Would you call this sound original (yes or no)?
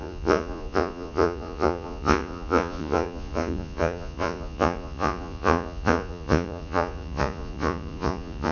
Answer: no